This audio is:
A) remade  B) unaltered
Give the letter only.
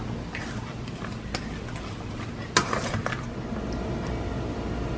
B